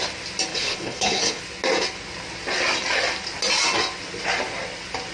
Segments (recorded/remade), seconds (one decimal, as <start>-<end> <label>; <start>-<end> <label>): 0.0-0.5 recorded; 0.5-1.4 remade; 1.4-5.1 recorded